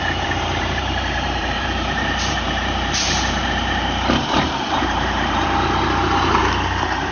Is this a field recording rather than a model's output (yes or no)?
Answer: no